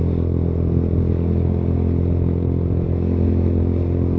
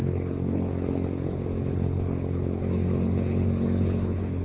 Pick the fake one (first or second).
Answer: second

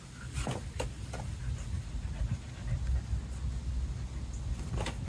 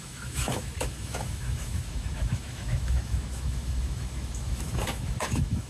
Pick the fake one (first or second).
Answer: second